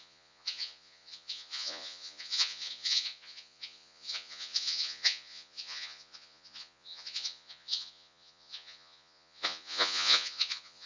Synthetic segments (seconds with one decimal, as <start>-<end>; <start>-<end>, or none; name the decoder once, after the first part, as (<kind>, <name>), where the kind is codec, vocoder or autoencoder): 0.0-10.9 (vocoder, Vocos)